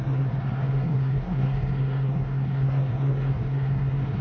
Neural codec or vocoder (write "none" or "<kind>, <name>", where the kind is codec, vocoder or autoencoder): codec, SNAC